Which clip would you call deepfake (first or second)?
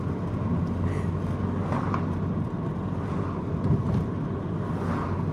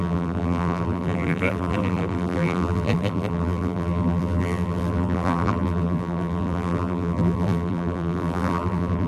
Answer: second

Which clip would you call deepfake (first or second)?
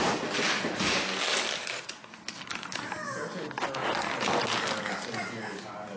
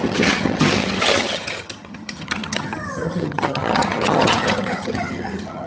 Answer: second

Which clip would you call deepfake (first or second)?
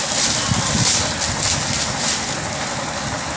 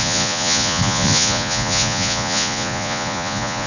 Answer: second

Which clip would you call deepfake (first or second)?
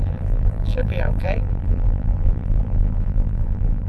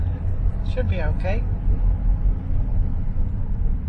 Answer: first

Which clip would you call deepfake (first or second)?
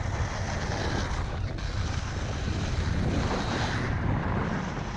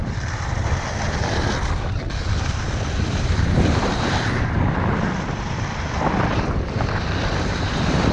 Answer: second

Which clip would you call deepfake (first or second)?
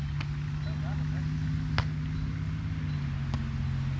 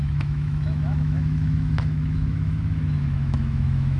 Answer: second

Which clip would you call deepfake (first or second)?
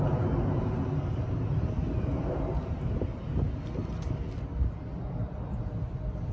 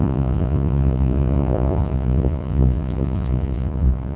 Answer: second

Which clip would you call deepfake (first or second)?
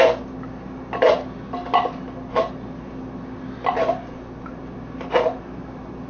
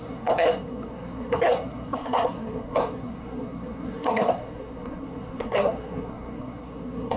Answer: second